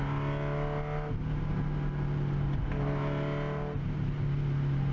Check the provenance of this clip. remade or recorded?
recorded